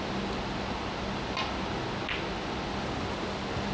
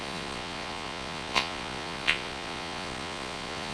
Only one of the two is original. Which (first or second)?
first